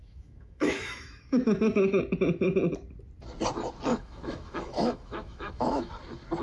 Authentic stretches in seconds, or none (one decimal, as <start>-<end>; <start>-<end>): 2.0-3.9; 5.9-6.4